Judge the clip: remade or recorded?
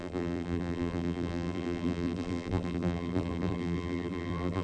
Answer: remade